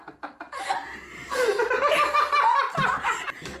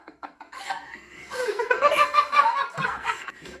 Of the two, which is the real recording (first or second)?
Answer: first